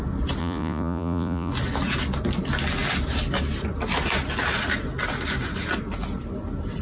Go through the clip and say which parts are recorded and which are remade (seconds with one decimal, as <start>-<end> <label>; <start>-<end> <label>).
0.0-0.4 recorded; 0.4-1.5 remade; 1.5-6.8 recorded

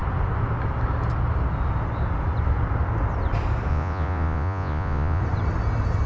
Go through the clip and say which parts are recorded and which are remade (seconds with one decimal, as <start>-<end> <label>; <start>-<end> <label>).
0.0-3.7 recorded; 3.7-5.2 remade; 5.2-6.1 recorded

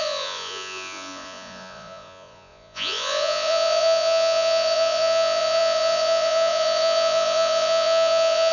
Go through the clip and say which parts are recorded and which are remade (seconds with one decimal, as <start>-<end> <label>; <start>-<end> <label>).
0.0-8.5 remade

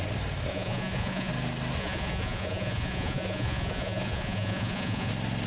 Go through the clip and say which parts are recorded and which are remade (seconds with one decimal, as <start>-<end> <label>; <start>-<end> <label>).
0.0-0.5 recorded; 0.5-1.3 remade; 1.3-1.8 recorded; 1.8-5.1 remade; 5.1-5.5 recorded